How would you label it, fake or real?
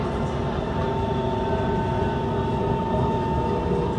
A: real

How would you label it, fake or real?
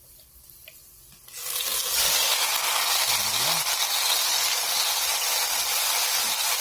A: real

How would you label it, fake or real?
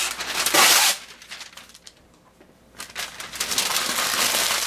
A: real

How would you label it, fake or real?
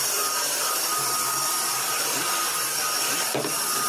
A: real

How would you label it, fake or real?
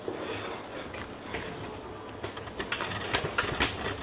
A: real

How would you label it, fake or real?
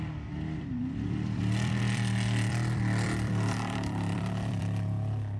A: fake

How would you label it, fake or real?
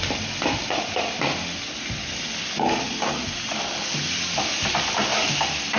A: fake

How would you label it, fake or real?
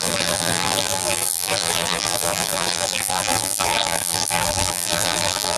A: fake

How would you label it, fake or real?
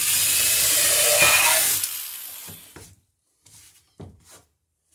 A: fake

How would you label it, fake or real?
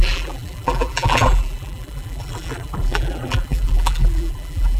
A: fake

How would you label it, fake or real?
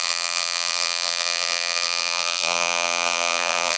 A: fake